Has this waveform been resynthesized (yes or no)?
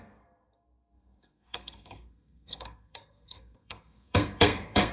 yes